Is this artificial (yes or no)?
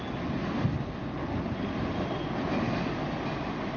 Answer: no